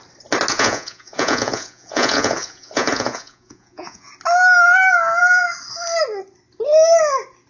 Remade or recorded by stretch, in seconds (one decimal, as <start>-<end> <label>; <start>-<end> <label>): 0.0-0.5 recorded; 0.5-4.1 remade; 4.1-7.5 recorded